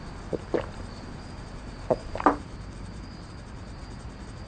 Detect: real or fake fake